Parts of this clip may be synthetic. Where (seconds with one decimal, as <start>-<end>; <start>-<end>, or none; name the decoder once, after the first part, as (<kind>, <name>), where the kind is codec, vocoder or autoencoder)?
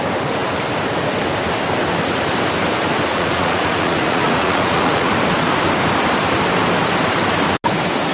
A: 3.1-5.1 (vocoder, Vocos)